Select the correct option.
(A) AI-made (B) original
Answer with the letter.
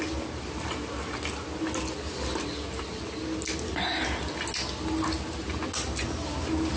B